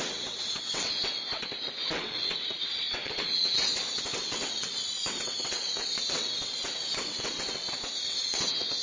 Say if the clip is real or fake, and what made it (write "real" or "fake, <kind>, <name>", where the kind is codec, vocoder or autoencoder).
fake, vocoder, WaveNeXt